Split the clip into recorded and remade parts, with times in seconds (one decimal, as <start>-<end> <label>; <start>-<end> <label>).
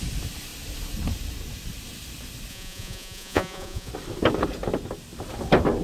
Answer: 0.0-2.5 recorded; 2.5-3.9 remade; 3.9-5.8 recorded